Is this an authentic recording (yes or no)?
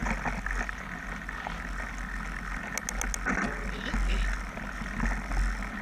yes